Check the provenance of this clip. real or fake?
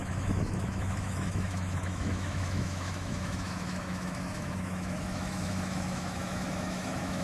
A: fake